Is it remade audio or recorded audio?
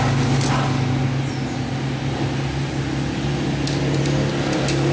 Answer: recorded